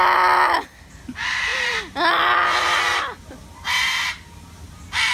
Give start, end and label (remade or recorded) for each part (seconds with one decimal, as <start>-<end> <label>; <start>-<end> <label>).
0.0-5.1 recorded